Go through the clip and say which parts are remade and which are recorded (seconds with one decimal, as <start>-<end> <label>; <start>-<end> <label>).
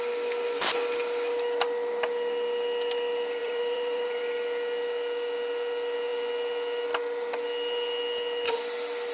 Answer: 0.0-3.4 recorded; 3.4-4.2 remade; 4.2-9.1 recorded